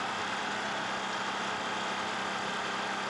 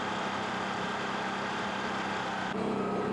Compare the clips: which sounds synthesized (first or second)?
second